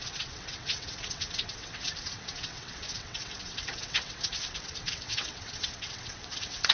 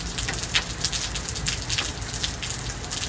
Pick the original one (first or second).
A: second